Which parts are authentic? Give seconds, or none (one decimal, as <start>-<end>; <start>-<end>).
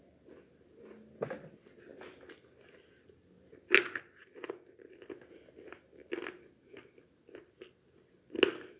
0.0-8.8